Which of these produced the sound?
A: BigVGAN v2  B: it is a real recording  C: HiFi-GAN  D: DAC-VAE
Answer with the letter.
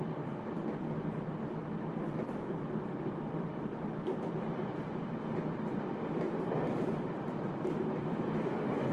A